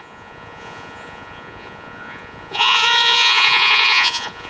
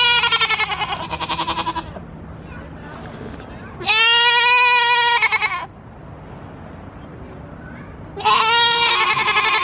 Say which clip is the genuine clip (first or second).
second